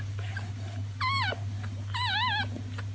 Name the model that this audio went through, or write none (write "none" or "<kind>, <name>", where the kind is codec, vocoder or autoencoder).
none